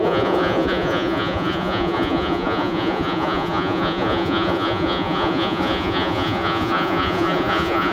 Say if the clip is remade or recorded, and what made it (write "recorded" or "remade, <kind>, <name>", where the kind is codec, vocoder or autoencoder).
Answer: remade, vocoder, Vocos